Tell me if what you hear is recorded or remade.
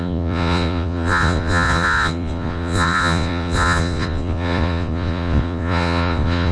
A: remade